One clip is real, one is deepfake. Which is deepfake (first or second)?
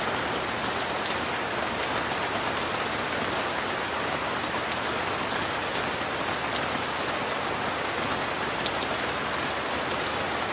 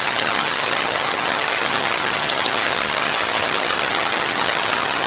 second